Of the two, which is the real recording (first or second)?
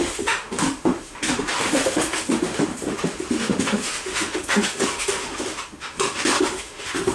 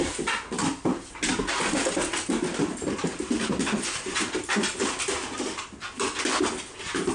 second